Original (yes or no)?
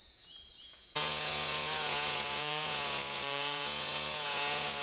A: no